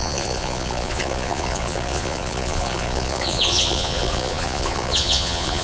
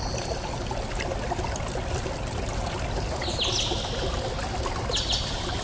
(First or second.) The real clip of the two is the second